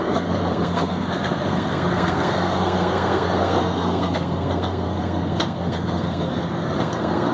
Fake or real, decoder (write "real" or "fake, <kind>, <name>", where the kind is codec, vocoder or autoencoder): fake, codec, SNAC